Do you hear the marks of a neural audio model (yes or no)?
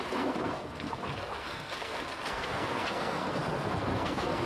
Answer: yes